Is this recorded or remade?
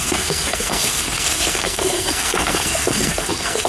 remade